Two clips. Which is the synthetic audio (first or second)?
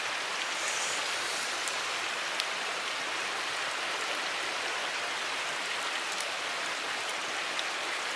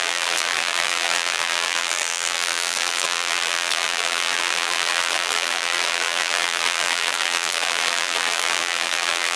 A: second